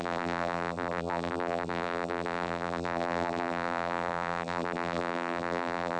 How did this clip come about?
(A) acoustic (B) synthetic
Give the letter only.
B